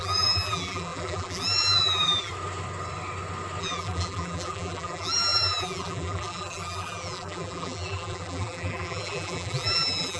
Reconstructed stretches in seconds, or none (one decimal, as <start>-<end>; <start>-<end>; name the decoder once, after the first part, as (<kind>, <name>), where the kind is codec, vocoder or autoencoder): 0.0-2.3 (vocoder, BigVGAN v2); 3.6-10.2